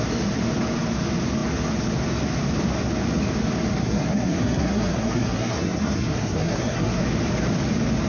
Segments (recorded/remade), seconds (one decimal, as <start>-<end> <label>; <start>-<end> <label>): 0.0-3.8 recorded; 3.8-7.0 remade; 7.0-8.1 recorded

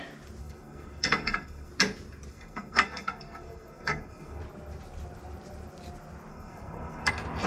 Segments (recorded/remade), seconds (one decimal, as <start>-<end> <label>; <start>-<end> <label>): 0.0-0.4 recorded; 0.4-1.7 remade; 1.7-2.3 recorded; 2.3-4.4 remade; 4.4-6.3 recorded; 6.3-7.1 remade; 7.1-7.5 recorded

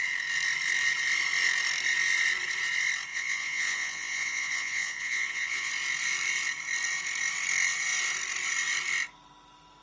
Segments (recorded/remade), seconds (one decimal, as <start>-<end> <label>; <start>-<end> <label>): 0.0-3.1 recorded; 3.1-5.7 remade; 5.7-9.8 recorded

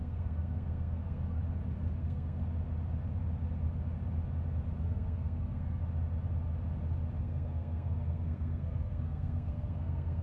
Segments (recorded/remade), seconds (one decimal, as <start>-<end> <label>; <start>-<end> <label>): 0.0-1.4 remade; 1.4-2.0 recorded; 2.0-2.4 remade; 2.4-4.8 recorded; 4.8-5.8 remade; 5.8-7.2 recorded; 7.2-10.2 remade

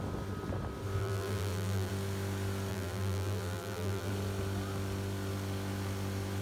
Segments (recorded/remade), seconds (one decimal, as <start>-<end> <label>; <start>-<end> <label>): 0.0-1.0 recorded; 1.0-1.9 remade; 1.9-2.7 recorded; 2.7-4.1 remade; 4.1-6.4 recorded

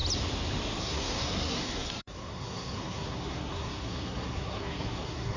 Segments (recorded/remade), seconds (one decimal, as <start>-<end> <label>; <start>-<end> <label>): 0.0-0.8 recorded; 0.8-5.4 remade

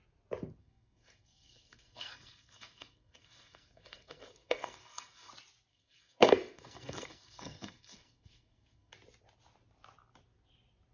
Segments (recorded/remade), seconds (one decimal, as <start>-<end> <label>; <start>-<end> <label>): 0.0-0.6 recorded; 0.6-5.3 remade; 5.3-5.7 recorded; 5.7-8.9 remade; 8.9-10.9 recorded